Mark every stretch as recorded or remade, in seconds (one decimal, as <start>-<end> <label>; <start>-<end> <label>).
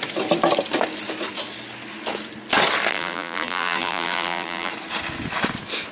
0.0-2.9 recorded; 2.9-4.7 remade; 4.7-5.9 recorded